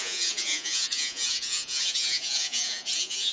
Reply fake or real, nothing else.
fake